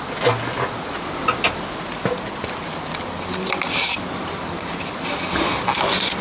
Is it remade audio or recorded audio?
recorded